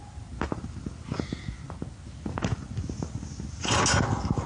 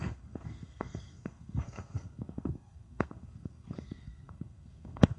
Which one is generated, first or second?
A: second